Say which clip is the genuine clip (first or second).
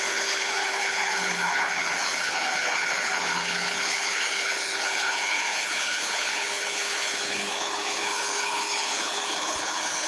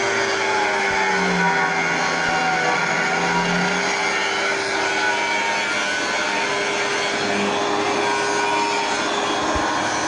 second